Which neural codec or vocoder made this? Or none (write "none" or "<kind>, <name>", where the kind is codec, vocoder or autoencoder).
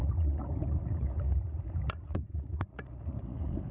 vocoder, Vocos